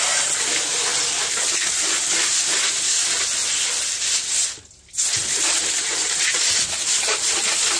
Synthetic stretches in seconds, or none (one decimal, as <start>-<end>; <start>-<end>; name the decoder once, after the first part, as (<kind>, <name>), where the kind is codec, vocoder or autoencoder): none